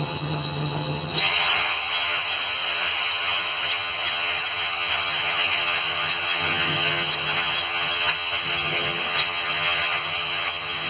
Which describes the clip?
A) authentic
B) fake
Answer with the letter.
B